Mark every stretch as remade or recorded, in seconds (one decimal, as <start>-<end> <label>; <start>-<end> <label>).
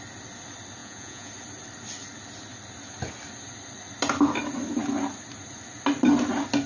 0.0-0.8 recorded; 0.8-1.3 remade; 1.3-6.7 recorded